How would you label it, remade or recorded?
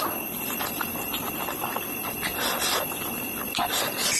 recorded